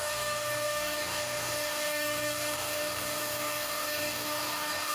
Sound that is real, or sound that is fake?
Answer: fake